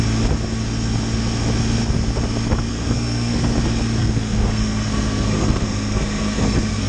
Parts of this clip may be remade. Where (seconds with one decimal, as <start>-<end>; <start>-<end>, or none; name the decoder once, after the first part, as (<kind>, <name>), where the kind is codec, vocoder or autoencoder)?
2.7-3.4 (codec, SNAC); 4.0-6.9